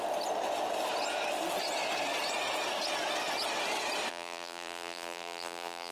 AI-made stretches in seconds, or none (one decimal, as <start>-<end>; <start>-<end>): 4.1-5.9